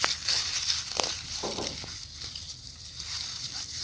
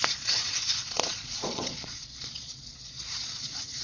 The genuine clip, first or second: first